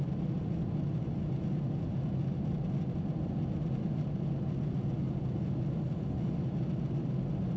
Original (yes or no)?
yes